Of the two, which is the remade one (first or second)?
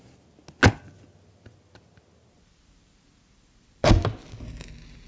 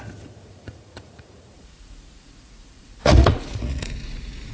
second